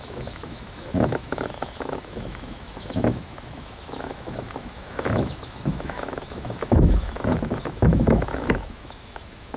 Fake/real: fake